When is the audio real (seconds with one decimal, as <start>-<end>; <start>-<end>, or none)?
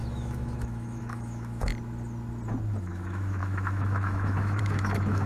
1.7-2.8